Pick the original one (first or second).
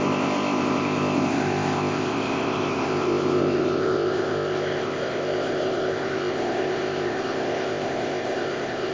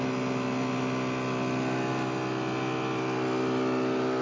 second